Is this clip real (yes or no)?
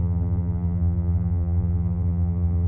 no